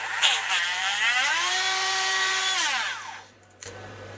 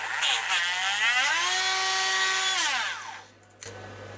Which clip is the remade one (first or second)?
first